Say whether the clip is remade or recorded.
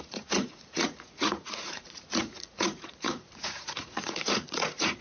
remade